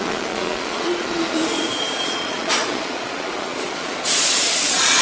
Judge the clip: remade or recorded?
remade